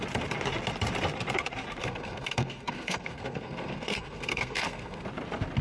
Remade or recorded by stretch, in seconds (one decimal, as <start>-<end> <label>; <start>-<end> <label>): 0.0-1.8 recorded; 1.8-5.0 remade; 5.0-5.6 recorded